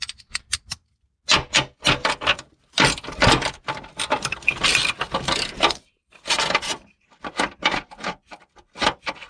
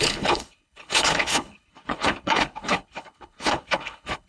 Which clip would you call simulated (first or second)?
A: second